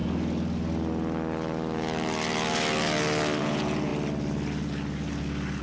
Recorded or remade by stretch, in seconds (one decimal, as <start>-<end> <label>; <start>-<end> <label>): 0.0-3.4 recorded; 3.4-3.9 remade; 3.9-5.6 recorded